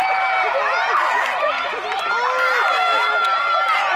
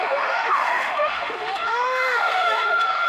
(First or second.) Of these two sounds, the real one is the first